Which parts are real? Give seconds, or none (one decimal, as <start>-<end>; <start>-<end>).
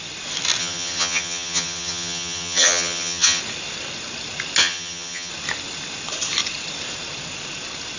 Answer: 0.0-0.6; 3.4-4.6; 5.3-8.0